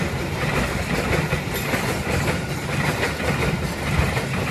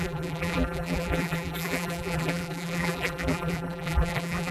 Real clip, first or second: first